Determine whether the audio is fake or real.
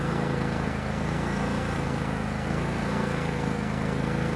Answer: fake